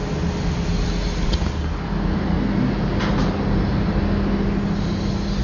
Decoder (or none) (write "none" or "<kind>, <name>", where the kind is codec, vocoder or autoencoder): none